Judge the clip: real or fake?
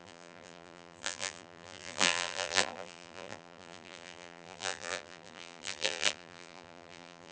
fake